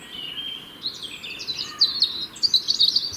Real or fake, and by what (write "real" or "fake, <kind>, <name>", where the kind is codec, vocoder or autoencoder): real